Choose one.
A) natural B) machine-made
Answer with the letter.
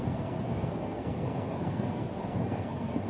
B